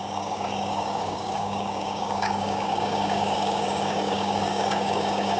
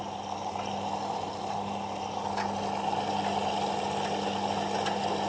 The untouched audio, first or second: second